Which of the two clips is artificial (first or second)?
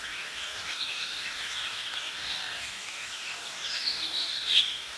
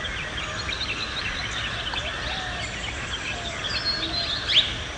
first